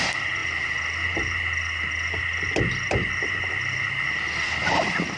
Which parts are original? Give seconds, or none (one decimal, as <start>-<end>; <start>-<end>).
0.0-5.2